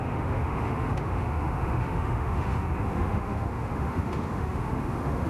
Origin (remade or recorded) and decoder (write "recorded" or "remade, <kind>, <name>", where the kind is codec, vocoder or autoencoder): remade, autoencoder, DAC-VAE